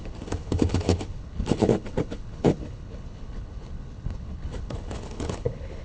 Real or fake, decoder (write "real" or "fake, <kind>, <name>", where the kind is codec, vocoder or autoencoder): fake, codec, HILCodec